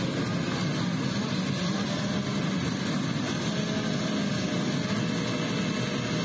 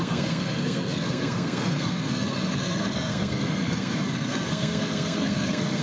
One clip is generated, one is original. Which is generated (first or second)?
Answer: second